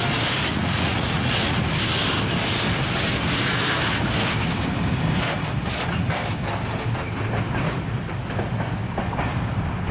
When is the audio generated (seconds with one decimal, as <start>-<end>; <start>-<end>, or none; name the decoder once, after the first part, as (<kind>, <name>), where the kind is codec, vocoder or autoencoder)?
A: 0.5-1.6 (vocoder, Vocos)